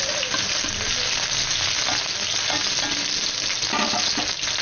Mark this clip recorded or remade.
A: recorded